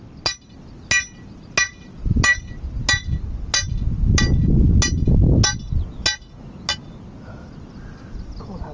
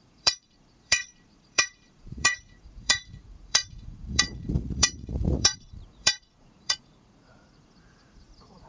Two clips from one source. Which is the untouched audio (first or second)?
first